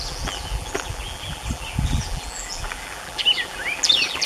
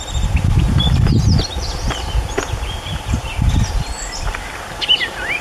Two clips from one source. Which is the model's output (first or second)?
first